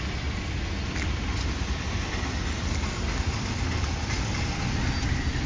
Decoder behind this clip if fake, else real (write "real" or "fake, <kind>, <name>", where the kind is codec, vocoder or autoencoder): real